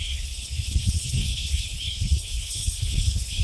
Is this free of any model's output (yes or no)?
no